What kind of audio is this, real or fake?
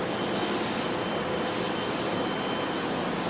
real